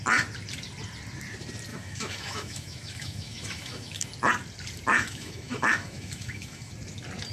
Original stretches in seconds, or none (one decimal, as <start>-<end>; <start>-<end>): 0.0-1.7; 4.1-4.9; 6.7-7.3